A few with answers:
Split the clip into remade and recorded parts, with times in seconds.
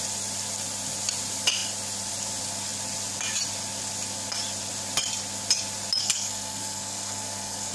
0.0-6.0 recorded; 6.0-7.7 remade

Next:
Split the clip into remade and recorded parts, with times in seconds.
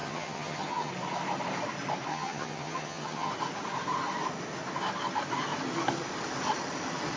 0.0-0.9 remade; 0.9-2.1 recorded; 2.1-3.3 remade; 3.3-7.2 recorded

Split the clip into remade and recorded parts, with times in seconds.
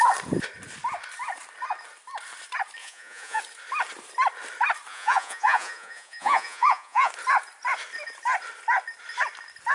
0.0-2.8 recorded; 2.8-3.4 remade; 3.4-4.9 recorded; 4.9-7.1 remade; 7.1-9.7 recorded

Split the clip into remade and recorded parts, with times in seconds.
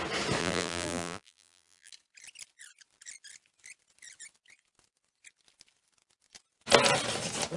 0.0-0.4 recorded; 0.4-1.9 remade; 1.9-7.6 recorded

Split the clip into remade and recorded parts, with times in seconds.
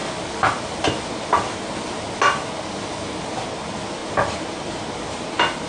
0.0-5.7 recorded